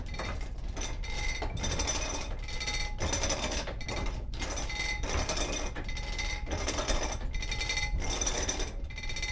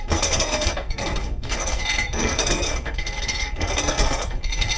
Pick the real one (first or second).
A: first